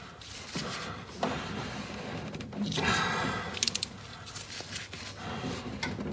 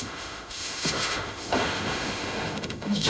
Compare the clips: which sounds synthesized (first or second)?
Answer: second